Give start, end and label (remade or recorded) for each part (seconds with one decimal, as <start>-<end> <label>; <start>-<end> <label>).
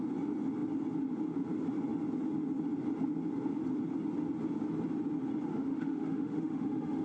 0.0-5.5 recorded; 5.5-7.0 remade